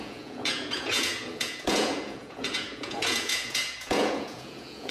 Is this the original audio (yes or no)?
no